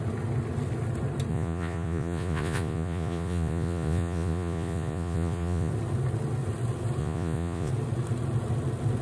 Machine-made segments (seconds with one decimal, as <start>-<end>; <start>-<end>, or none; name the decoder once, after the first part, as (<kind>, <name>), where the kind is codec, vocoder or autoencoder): 1.3-5.7 (vocoder, Vocos); 7.0-7.7